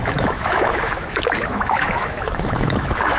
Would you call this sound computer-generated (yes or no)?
yes